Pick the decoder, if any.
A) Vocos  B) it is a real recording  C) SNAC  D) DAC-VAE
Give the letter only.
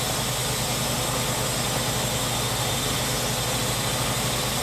B